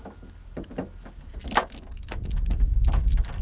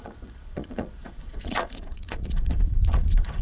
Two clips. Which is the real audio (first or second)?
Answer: first